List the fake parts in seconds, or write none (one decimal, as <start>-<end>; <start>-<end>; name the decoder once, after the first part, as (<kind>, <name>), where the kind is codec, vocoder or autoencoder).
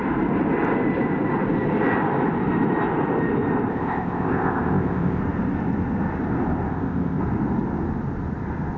3.7-5.2 (codec, ZipCodec); 6.7-7.2